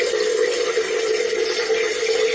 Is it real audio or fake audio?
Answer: real